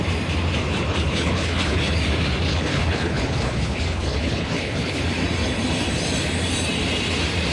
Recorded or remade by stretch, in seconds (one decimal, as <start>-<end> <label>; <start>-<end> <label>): 0.0-0.6 recorded; 0.6-2.0 remade; 2.0-2.5 recorded; 2.5-5.0 remade; 5.0-7.5 recorded